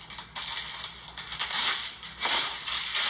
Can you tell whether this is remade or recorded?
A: recorded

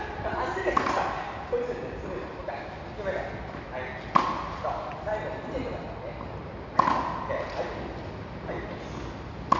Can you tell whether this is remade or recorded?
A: recorded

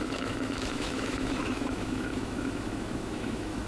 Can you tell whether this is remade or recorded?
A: remade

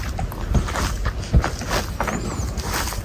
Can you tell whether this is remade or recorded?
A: recorded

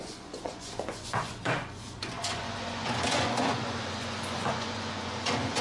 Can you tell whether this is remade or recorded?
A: remade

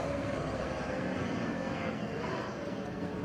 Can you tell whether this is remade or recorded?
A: remade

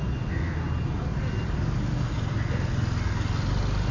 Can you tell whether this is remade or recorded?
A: recorded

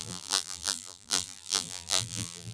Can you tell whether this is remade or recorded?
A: remade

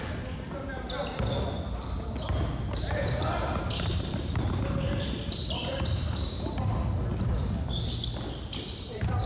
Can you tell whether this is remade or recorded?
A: recorded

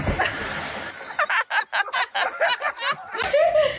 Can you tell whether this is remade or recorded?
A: recorded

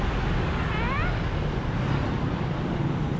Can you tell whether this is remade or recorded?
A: recorded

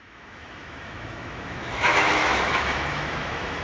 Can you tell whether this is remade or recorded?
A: remade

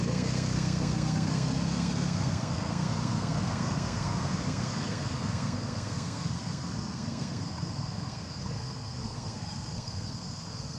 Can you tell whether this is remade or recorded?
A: remade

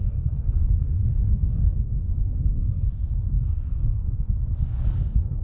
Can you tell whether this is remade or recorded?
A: remade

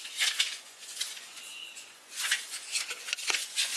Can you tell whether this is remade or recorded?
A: remade